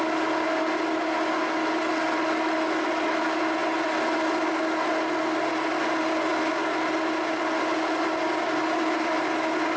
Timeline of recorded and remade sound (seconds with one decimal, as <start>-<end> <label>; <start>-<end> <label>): 0.0-9.8 recorded